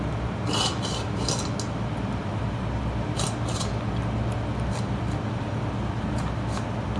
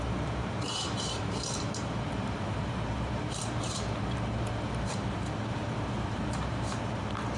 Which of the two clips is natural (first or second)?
first